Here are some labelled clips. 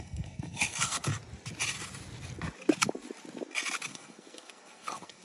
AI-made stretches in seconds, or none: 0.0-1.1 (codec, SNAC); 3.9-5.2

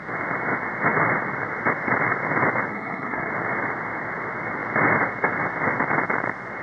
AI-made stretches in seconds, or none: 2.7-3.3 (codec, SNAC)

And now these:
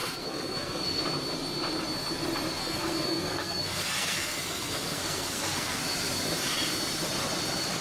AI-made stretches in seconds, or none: 0.0-1.0 (codec, SNAC); 2.6-5.8